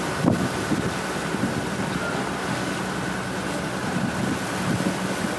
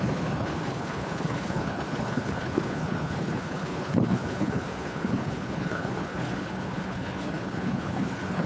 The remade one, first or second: second